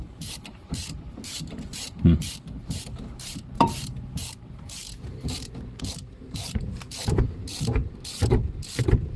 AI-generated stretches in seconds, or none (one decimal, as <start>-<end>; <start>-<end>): 0.0-9.2